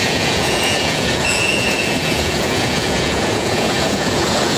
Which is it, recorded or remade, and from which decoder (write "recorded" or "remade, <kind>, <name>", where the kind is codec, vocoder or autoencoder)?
remade, vocoder, Vocos